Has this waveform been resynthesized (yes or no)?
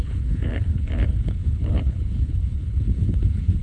yes